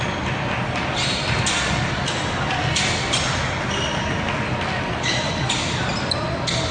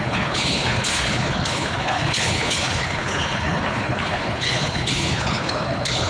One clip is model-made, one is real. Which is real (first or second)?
first